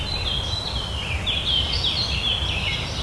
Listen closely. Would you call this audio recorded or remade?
recorded